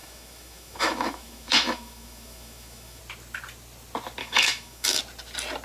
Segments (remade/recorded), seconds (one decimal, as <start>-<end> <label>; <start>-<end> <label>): 0.0-3.0 remade; 3.0-4.2 recorded; 4.2-5.0 remade; 5.0-5.6 recorded